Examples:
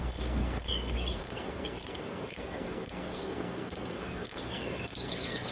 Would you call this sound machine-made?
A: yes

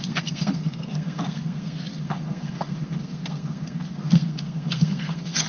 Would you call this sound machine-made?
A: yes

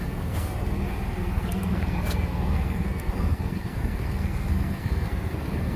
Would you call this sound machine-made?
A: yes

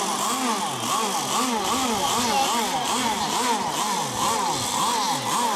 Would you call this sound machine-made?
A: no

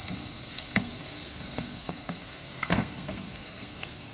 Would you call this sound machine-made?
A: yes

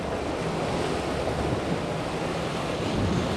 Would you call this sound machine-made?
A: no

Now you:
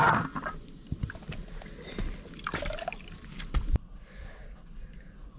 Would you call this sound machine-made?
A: no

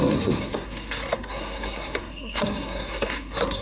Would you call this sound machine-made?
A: yes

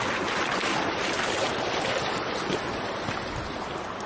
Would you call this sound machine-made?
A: no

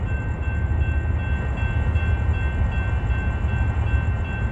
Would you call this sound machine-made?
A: no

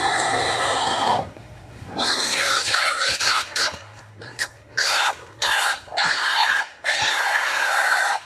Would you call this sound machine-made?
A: yes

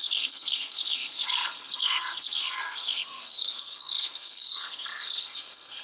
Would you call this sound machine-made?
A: yes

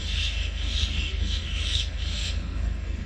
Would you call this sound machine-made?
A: yes